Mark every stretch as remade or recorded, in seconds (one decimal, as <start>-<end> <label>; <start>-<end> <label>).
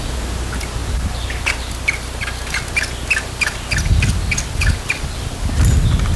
0.0-6.2 recorded